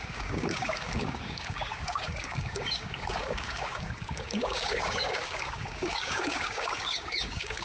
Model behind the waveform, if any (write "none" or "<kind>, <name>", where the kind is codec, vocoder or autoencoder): codec, DAC